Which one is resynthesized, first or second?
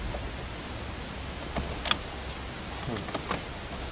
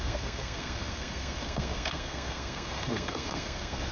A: second